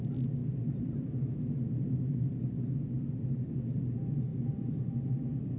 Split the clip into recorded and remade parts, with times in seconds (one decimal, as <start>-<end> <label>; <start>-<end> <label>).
0.0-5.6 recorded